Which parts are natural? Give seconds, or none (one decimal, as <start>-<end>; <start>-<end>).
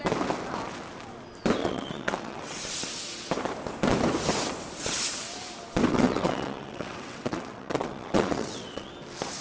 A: 0.0-1.6; 2.6-5.9; 8.9-9.4